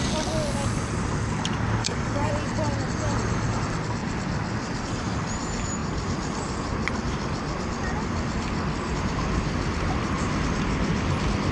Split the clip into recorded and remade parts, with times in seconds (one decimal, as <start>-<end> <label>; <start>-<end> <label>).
0.0-1.8 recorded; 1.8-2.3 remade; 2.3-11.5 recorded